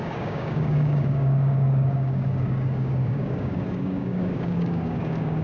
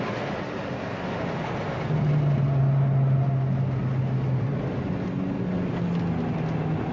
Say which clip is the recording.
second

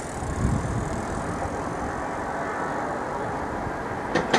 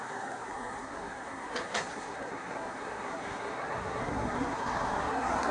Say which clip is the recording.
first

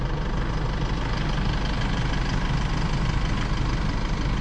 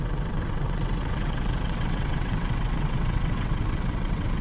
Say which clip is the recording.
first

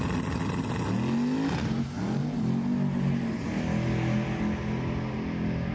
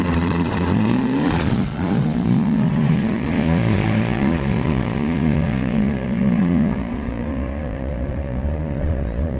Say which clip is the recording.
first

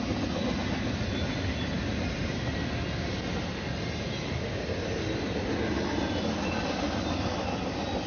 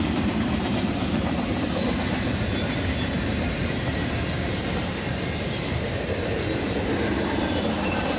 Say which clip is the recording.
first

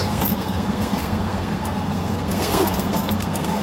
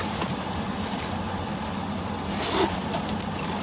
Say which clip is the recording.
second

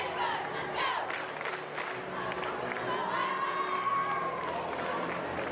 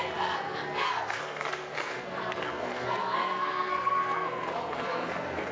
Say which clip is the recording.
first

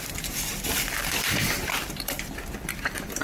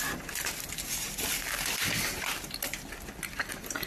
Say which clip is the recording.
second